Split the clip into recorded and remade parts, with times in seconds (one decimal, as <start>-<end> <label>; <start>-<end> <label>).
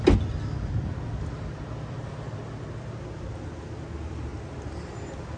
0.0-5.4 recorded